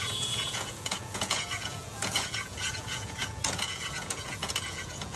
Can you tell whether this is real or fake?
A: fake